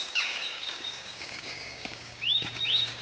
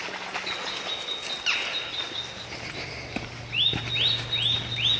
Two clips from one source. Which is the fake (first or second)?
first